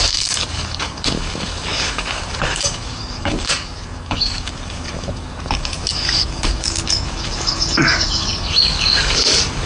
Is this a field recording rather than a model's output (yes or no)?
no